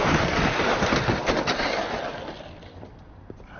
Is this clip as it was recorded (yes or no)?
yes